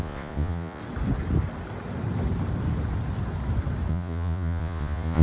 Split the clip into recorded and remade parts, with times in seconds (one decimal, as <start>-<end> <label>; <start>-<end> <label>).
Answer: 0.0-0.8 remade; 0.8-3.9 recorded; 3.9-5.2 remade